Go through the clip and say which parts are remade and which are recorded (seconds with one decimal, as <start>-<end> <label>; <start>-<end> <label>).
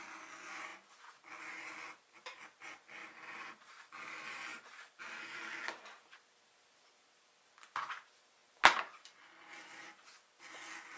0.0-3.0 recorded; 3.0-3.9 remade; 3.9-4.5 recorded; 4.5-5.0 remade; 5.0-11.0 recorded